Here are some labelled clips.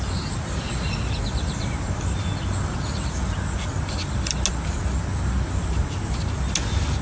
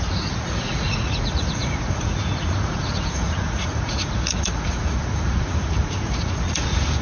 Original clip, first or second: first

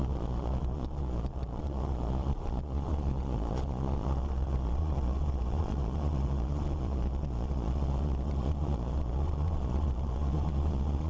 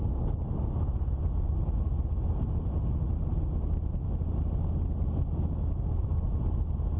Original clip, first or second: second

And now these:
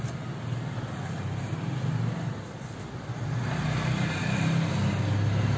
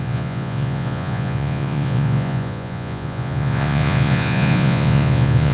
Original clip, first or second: first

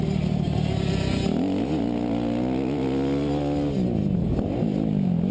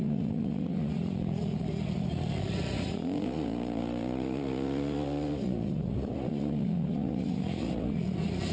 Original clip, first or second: first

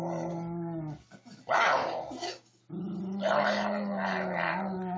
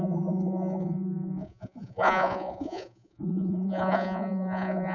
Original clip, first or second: first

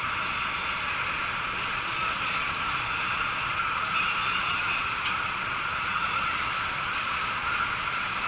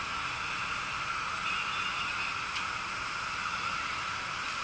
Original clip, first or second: second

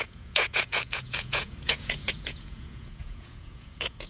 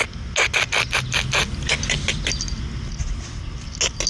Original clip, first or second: second